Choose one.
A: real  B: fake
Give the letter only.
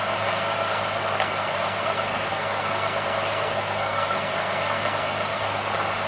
B